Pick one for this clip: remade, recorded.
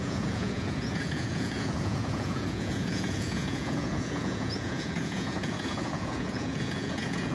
remade